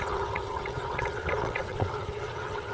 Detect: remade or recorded remade